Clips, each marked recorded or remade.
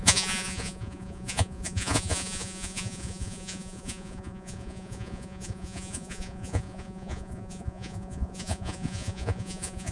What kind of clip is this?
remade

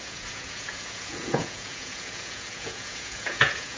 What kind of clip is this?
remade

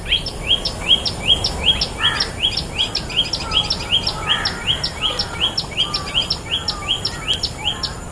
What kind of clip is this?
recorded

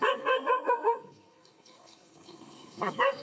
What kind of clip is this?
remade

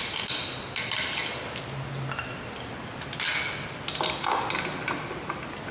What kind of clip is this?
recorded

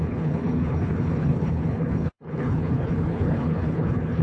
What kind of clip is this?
remade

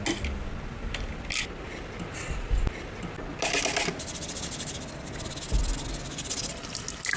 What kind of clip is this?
recorded